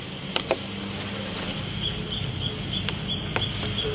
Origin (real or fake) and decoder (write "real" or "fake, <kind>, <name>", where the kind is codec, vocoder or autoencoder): real